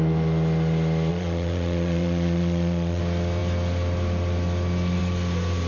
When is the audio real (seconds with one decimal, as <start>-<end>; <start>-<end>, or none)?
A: 0.0-1.1; 3.0-5.7